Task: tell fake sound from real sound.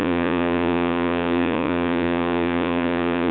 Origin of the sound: fake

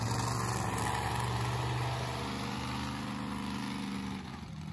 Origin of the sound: real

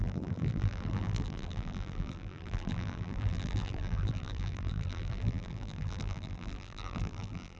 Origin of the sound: fake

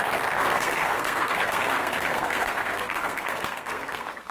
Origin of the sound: fake